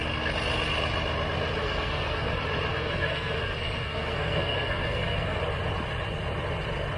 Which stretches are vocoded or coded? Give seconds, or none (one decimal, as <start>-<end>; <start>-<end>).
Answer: 1.6-2.3; 2.7-5.4